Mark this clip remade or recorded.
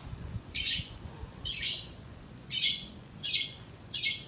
remade